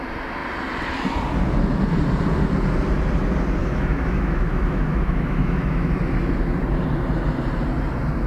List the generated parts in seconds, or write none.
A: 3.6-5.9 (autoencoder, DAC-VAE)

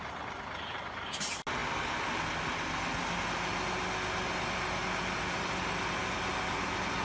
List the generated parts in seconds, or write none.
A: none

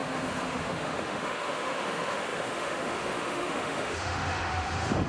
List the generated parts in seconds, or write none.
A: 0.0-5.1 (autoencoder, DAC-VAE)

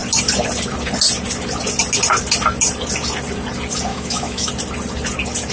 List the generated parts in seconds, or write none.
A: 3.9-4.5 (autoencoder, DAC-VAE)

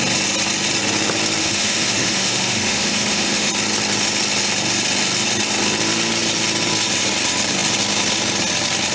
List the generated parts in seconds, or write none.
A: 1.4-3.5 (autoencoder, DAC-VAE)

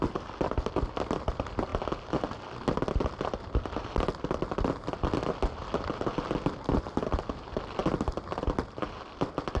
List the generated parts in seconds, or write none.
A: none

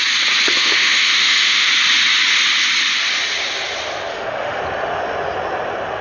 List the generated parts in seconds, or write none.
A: 0.5-1.7 (autoencoder, DAC-VAE); 4.1-4.6